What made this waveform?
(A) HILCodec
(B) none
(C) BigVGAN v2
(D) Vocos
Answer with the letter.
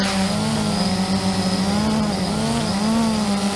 B